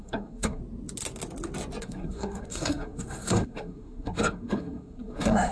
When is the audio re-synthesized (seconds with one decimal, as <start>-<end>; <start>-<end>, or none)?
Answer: 0.0-0.6; 1.8-5.5